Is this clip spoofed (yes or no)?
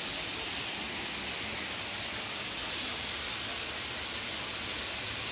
no